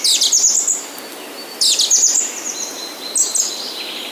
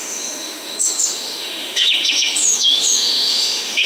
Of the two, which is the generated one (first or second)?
second